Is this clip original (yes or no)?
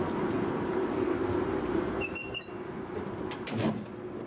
yes